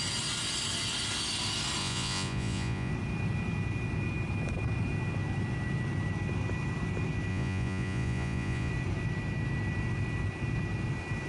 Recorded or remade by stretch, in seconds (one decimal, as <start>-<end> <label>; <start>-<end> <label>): 0.0-1.8 recorded; 1.8-2.9 remade; 2.9-7.3 recorded; 7.3-8.7 remade; 8.7-11.3 recorded